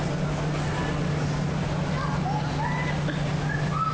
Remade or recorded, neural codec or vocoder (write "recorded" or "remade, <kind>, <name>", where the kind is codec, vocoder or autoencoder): recorded